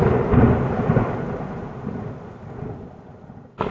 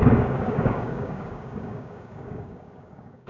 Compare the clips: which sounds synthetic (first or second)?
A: second